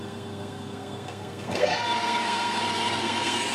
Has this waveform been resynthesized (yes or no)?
yes